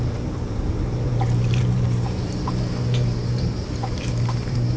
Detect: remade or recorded remade